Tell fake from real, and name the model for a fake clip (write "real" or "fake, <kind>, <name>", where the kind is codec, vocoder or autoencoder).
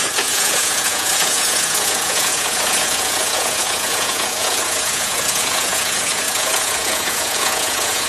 fake, vocoder, Vocos